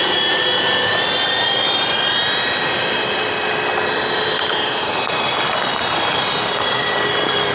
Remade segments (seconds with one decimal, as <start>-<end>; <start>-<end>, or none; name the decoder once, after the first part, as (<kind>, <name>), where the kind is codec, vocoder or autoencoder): none